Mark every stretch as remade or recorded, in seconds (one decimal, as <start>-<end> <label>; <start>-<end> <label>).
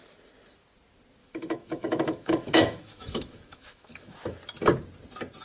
0.0-1.2 recorded; 1.2-4.4 remade; 4.4-5.4 recorded